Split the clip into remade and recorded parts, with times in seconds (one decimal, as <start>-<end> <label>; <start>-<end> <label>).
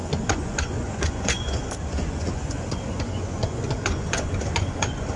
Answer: 0.0-5.2 remade